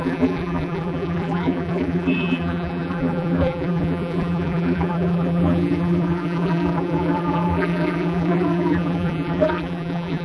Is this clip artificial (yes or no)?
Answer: yes